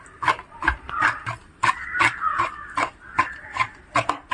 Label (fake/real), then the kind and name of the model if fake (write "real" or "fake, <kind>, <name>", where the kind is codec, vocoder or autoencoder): fake, vocoder, BigVGAN v2